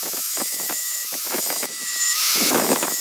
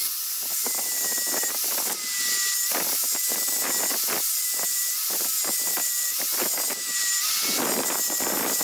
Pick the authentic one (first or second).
second